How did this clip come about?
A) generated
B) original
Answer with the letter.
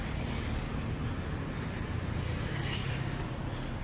B